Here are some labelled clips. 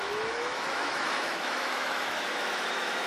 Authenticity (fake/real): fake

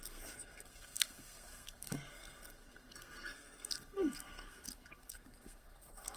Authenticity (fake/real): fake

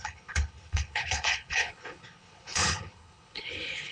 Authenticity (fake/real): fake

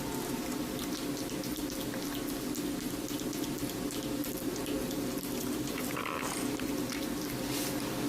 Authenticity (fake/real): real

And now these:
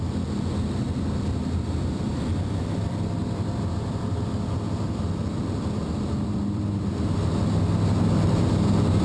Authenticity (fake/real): fake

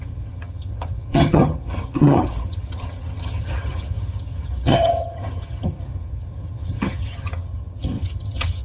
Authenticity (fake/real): fake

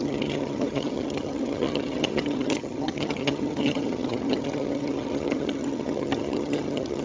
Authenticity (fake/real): fake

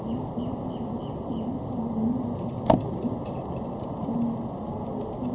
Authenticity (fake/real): real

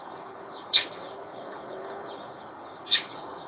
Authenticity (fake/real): fake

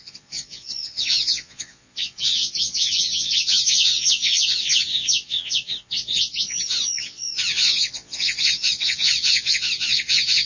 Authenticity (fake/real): fake